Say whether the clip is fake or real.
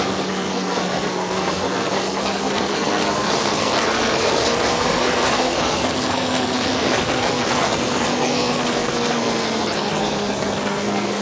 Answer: fake